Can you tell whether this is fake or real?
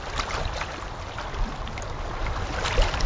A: real